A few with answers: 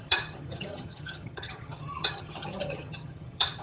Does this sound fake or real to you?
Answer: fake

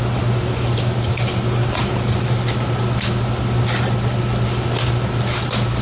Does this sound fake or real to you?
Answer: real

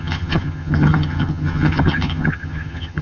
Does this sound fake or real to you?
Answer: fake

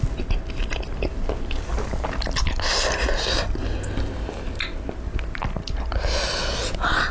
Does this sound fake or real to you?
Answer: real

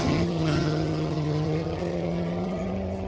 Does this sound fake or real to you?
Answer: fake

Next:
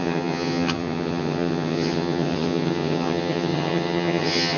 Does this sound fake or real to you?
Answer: fake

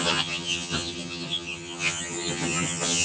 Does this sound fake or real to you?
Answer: fake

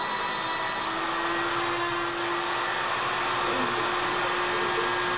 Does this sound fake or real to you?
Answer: real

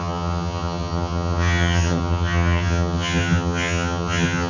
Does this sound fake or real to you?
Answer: fake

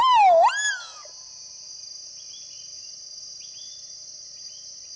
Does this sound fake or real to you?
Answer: real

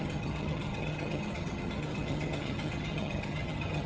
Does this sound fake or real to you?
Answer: fake